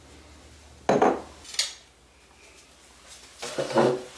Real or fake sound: real